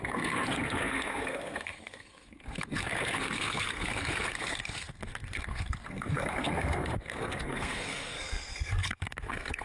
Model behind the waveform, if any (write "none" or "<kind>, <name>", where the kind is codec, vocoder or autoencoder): codec, SNAC